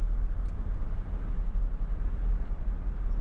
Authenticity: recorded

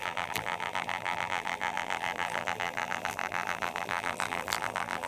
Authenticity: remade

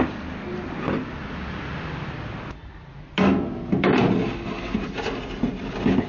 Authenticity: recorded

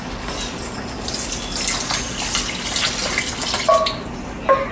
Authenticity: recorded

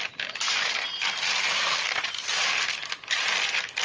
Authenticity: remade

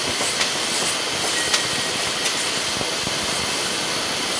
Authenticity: recorded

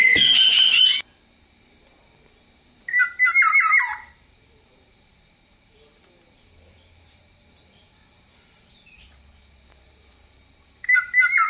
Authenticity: remade